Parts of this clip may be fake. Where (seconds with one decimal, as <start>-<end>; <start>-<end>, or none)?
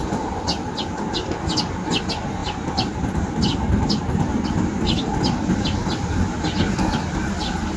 none